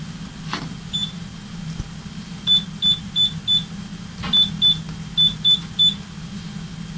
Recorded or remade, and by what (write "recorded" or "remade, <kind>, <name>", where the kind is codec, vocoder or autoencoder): recorded